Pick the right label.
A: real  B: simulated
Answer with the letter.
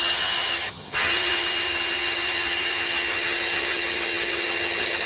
B